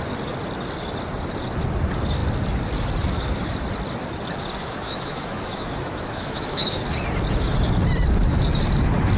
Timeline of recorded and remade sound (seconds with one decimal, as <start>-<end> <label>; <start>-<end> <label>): 0.0-4.6 recorded; 4.6-6.8 remade; 6.8-9.2 recorded